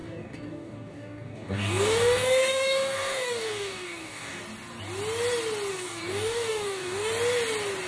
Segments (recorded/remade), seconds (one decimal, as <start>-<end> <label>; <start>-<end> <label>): 0.0-4.4 remade; 4.4-5.7 recorded; 5.7-7.1 remade; 7.1-7.9 recorded